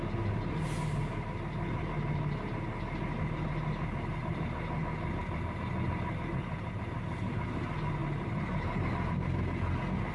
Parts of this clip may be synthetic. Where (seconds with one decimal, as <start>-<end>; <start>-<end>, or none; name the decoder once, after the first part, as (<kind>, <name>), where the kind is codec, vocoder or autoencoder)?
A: none